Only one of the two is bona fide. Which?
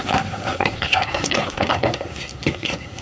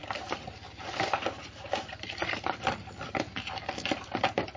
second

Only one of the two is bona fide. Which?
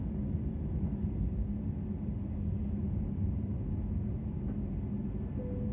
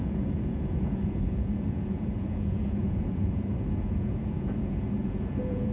first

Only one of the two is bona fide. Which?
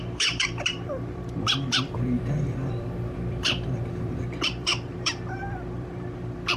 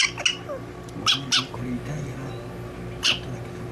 second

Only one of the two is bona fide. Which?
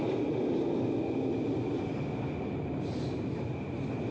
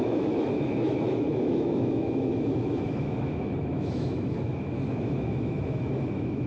first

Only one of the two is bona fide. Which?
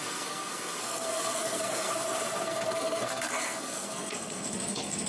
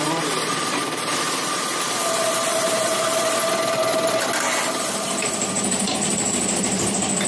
second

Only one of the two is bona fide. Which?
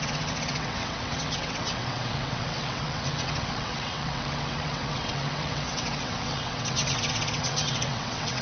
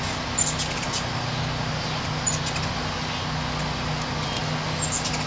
second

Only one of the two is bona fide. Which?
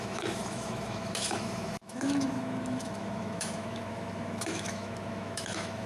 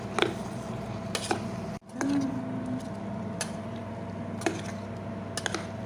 second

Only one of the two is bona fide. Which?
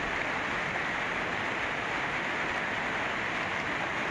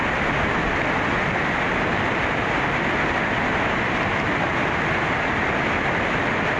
second